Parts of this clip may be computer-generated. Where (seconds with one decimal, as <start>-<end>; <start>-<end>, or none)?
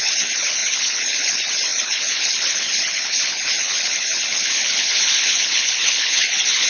0.0-6.7